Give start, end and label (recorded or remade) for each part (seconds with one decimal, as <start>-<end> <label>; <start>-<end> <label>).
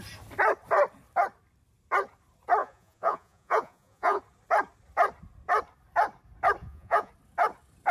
0.0-2.6 recorded; 2.6-4.2 remade; 4.2-6.6 recorded; 6.6-7.1 remade; 7.1-7.9 recorded